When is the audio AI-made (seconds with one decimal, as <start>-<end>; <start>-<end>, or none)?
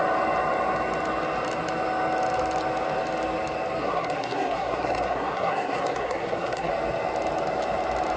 3.8-6.7